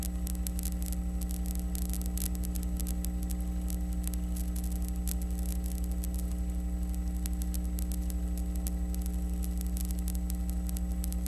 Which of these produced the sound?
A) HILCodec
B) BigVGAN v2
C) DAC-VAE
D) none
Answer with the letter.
D